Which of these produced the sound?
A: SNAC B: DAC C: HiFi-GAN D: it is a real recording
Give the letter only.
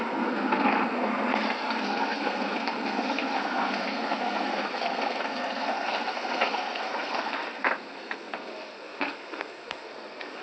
A